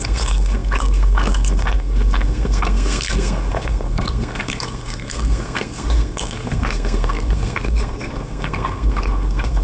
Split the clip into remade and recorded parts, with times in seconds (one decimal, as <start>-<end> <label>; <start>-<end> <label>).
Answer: 0.0-9.6 remade

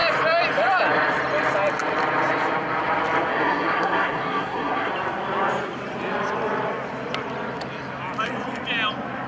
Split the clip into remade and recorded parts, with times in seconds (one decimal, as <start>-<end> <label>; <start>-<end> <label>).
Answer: 0.0-3.3 recorded; 3.3-4.9 remade; 4.9-9.3 recorded

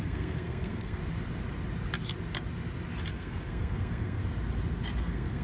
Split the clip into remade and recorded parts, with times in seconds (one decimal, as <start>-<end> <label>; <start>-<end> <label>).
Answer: 0.0-1.0 remade; 1.0-3.1 recorded; 3.1-4.2 remade; 4.2-5.0 recorded; 5.0-5.4 remade

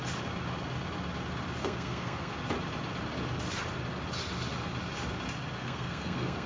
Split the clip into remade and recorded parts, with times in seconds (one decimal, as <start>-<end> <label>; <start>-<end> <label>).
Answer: 0.0-1.6 recorded; 1.6-2.3 remade; 2.3-5.6 recorded; 5.6-6.5 remade

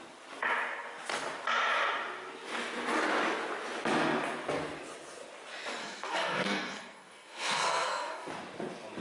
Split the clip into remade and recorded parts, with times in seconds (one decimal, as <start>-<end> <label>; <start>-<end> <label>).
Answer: 0.0-5.8 recorded; 5.8-8.3 remade; 8.3-9.0 recorded

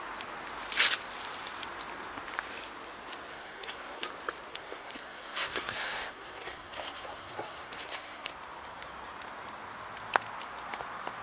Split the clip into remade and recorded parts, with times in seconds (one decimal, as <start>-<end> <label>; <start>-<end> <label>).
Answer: 0.0-3.3 recorded; 3.3-4.1 remade; 4.1-4.5 recorded; 4.5-8.3 remade; 8.3-11.2 recorded

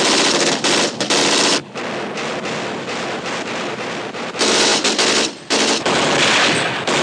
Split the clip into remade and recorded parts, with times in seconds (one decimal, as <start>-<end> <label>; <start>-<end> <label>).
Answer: 0.0-7.0 recorded

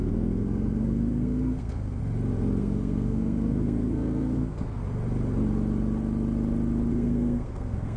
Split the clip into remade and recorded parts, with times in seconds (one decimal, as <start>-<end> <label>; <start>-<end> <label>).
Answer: 0.0-2.0 remade; 2.0-2.6 recorded; 2.6-4.8 remade; 4.8-6.9 recorded; 6.9-8.0 remade